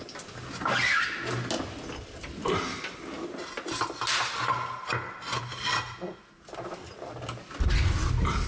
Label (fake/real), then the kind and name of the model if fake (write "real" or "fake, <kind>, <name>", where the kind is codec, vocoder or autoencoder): real